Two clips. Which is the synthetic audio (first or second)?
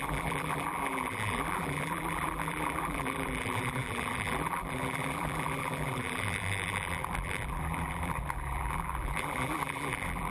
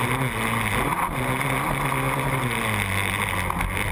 first